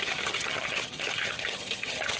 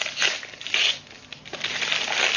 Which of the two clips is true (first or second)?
second